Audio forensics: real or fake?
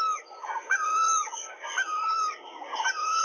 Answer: real